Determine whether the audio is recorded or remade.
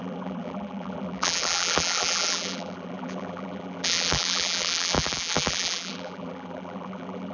remade